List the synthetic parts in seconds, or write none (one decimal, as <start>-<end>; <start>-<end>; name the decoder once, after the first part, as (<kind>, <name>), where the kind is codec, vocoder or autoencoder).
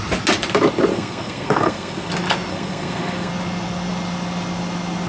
0.9-2.1 (codec, SNAC); 2.5-3.3